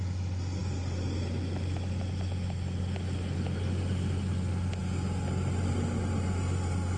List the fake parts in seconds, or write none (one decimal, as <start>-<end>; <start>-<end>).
none